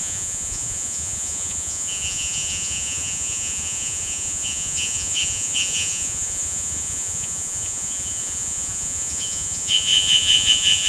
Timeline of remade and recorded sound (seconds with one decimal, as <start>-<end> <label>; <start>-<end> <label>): 0.0-10.9 remade